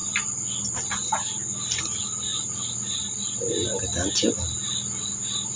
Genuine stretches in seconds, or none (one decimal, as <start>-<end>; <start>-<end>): 0.0-5.6